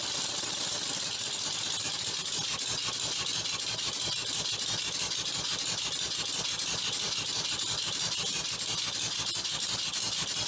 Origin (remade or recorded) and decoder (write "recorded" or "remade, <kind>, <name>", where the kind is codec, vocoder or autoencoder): recorded